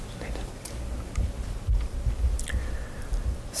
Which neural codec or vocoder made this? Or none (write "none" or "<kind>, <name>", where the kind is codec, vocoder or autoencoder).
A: none